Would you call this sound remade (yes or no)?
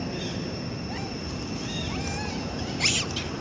no